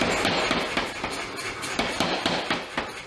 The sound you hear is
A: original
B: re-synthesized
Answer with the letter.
A